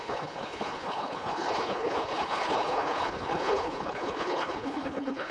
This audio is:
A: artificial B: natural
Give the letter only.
A